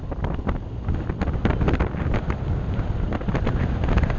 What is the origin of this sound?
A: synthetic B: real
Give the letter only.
B